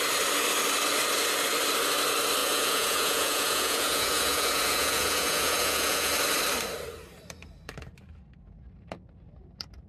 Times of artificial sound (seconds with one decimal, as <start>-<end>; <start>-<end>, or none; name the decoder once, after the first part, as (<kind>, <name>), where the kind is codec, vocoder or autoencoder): 2.4-6.1 (vocoder, Vocos)

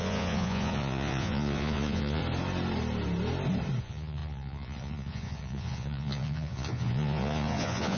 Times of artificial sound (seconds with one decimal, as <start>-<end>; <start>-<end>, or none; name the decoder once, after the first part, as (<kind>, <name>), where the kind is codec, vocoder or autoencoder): 0.0-2.2 (vocoder, Vocos); 3.8-8.0

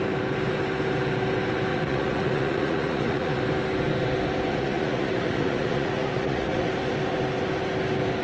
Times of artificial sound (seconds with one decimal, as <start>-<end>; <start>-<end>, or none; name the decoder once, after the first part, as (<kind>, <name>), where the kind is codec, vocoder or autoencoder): 1.7-3.4 (vocoder, Vocos); 4.5-6.7

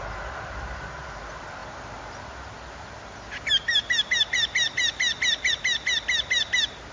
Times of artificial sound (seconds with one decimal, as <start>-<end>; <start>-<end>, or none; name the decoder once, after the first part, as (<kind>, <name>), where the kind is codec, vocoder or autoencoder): none